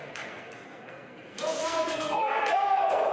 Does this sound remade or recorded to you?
remade